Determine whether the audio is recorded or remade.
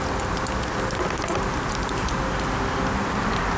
recorded